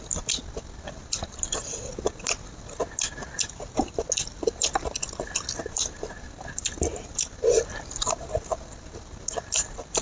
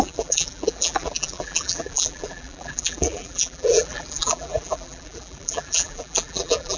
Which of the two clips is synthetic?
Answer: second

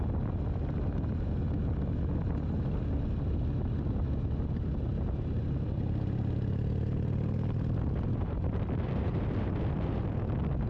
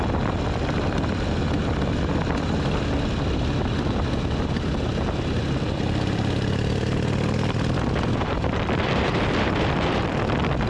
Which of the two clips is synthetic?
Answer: second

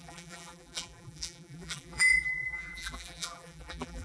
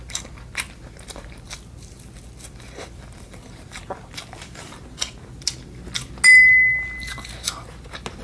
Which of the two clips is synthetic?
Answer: first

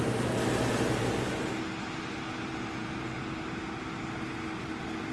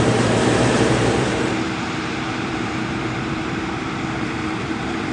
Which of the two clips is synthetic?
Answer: second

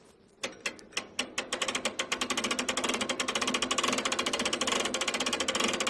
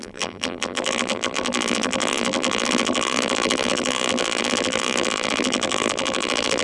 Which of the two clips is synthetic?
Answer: second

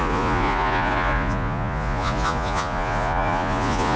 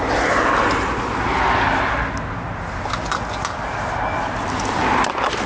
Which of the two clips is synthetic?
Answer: first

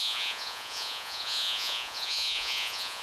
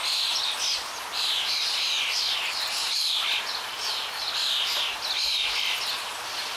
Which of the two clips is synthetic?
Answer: first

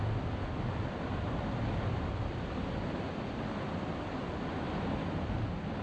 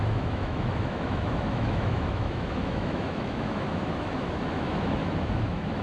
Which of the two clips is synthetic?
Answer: second